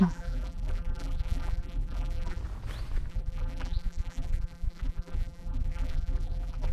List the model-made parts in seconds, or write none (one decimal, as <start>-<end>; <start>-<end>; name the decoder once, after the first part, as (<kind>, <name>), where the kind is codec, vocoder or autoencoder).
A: 0.0-2.4 (vocoder, BigVGAN v2); 3.1-6.7